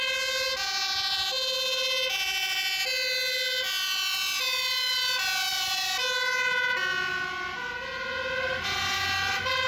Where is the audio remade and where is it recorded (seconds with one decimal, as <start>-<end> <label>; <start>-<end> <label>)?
0.0-5.5 recorded; 5.5-6.0 remade; 6.0-9.7 recorded